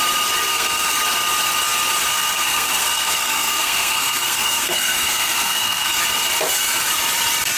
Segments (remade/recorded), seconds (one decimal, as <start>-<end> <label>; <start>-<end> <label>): 0.0-0.5 recorded; 0.5-1.0 remade; 1.0-2.1 recorded; 2.1-6.0 remade; 6.0-7.6 recorded